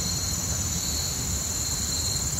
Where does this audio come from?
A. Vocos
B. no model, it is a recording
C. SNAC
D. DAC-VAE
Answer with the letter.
B